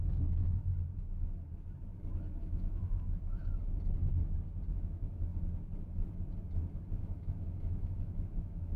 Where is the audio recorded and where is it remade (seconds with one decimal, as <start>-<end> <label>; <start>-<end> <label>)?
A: 0.0-0.7 remade; 0.7-2.4 recorded; 2.4-3.4 remade; 3.4-4.7 recorded; 4.7-5.3 remade; 5.3-7.0 recorded; 7.0-8.8 remade